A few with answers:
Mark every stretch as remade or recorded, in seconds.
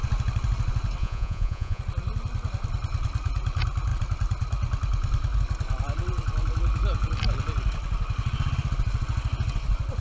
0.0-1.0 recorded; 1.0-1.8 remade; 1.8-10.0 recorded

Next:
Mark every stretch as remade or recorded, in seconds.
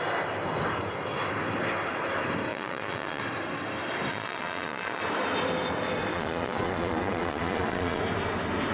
0.0-2.5 recorded; 2.5-3.2 remade; 3.2-4.1 recorded; 4.1-5.0 remade; 5.0-6.1 recorded; 6.1-8.0 remade; 8.0-8.7 recorded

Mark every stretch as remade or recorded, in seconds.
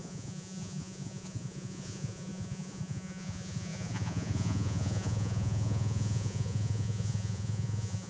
0.0-8.1 remade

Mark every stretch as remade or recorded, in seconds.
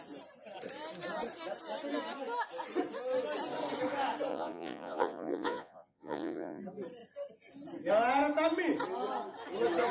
0.0-4.3 recorded; 4.3-6.6 remade; 6.6-9.9 recorded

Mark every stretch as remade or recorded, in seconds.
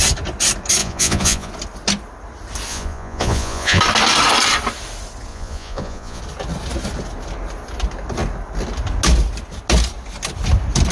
0.0-0.8 recorded; 0.8-1.5 remade; 1.5-2.7 recorded; 2.7-3.8 remade; 3.8-5.3 recorded; 5.3-6.2 remade; 6.2-10.9 recorded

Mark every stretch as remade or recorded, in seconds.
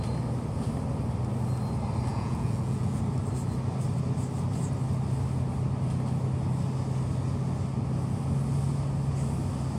0.0-2.1 recorded; 2.1-3.0 remade; 3.0-9.8 recorded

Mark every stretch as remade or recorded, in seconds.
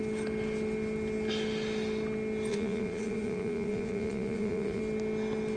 0.0-2.5 recorded; 2.5-4.8 remade; 4.8-5.6 recorded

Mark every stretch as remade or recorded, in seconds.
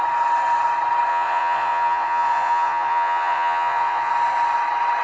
0.0-1.1 recorded; 1.1-4.1 remade; 4.1-5.0 recorded